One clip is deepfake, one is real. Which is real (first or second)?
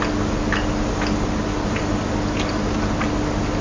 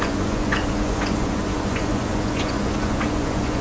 first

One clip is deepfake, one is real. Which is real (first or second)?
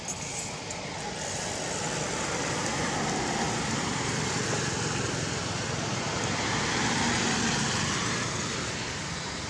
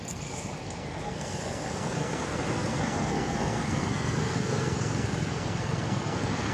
first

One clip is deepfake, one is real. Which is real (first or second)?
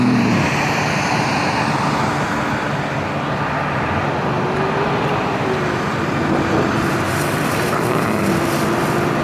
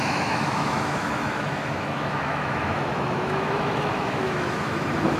first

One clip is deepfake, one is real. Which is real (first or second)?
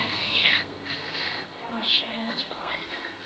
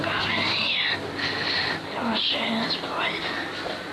second